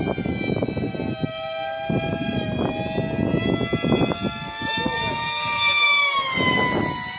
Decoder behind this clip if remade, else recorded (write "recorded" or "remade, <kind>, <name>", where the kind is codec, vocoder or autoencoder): recorded